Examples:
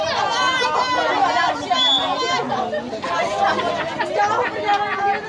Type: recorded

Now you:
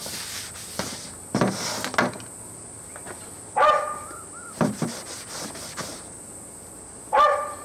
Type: recorded